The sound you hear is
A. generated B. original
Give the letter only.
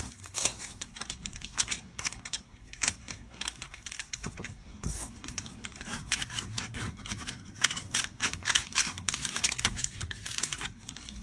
A